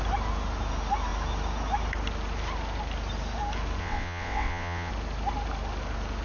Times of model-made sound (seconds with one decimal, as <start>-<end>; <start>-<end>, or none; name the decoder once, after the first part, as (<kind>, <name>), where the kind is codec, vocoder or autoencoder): 3.8-4.9 (vocoder, WaveNeXt)